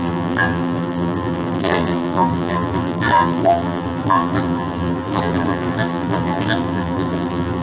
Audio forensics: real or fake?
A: fake